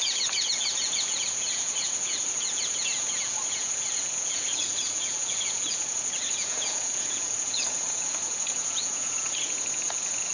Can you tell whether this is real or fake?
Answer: fake